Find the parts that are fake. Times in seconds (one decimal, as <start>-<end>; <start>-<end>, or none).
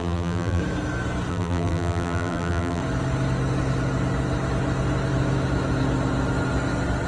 0.0-0.6; 1.3-2.8